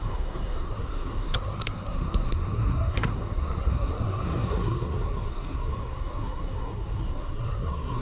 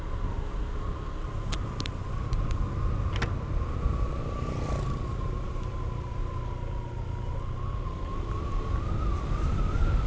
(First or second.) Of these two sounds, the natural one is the second